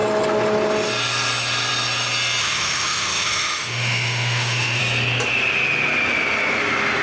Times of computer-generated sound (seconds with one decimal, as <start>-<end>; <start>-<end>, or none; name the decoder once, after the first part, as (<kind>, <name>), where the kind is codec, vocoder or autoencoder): 2.4-4.8 (autoencoder, DAC-VAE)